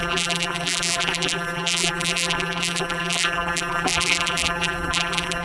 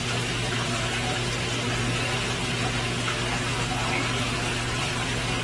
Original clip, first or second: second